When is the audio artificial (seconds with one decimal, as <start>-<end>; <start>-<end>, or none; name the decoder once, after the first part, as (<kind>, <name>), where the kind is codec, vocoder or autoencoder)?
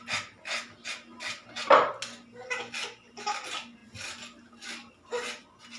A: none